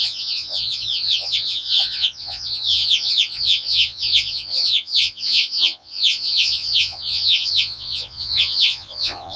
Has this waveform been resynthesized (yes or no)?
yes